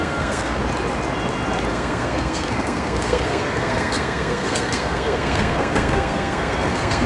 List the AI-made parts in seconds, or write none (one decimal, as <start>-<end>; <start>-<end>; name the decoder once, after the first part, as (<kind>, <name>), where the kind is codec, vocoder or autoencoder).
0.0-0.6 (codec, SNAC); 1.7-7.1